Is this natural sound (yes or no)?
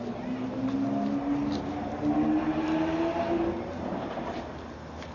yes